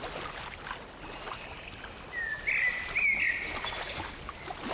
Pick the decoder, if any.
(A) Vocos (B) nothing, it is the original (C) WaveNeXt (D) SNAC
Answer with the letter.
B